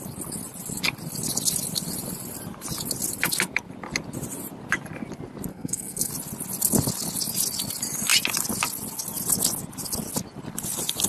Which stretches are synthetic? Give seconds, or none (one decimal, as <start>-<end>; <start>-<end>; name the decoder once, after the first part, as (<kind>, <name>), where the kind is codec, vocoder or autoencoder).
5.5-6.1 (codec, SNAC)